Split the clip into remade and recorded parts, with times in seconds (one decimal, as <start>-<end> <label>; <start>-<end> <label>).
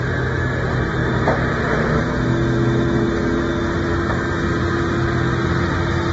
0.0-1.0 recorded; 1.0-2.0 remade; 2.0-6.1 recorded